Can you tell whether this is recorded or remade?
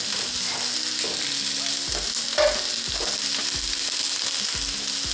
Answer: recorded